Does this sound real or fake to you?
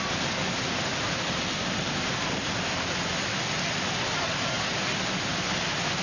real